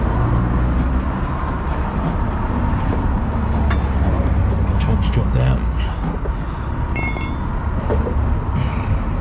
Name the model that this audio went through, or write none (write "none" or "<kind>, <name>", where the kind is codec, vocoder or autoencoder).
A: none